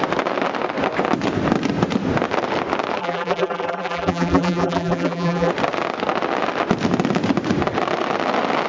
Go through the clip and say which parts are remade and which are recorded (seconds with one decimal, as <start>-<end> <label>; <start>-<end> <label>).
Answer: 0.0-3.0 recorded; 3.0-5.5 remade; 5.5-8.7 recorded